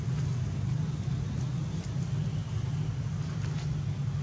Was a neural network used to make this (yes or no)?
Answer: no